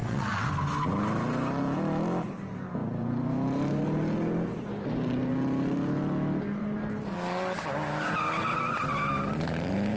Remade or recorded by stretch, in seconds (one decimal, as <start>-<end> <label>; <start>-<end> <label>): 0.0-0.5 remade; 0.5-10.0 recorded